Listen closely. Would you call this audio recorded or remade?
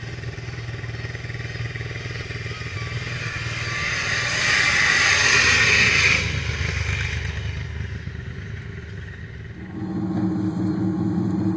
recorded